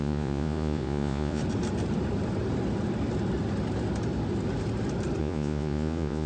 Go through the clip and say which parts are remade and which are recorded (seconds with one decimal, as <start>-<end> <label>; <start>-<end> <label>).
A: 0.0-1.4 remade; 1.4-5.2 recorded; 5.2-6.3 remade